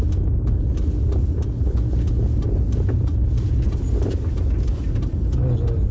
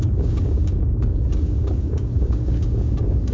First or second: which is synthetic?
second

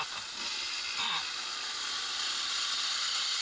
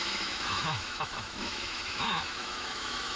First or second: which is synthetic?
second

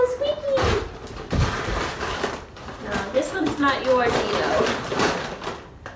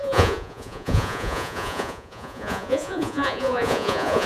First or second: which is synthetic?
second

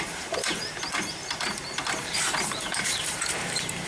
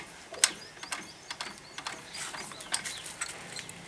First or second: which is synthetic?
first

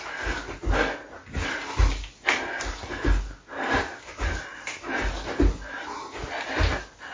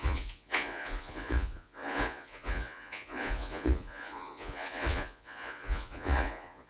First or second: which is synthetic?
second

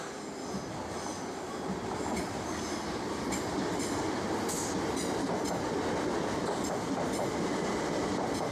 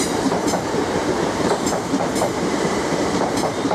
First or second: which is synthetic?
second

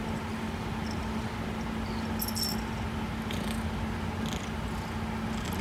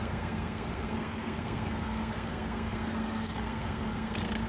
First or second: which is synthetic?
second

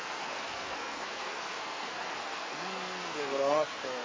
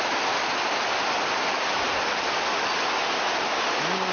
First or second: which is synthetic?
first